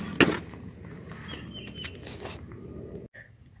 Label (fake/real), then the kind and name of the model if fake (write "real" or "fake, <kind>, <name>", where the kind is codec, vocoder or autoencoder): real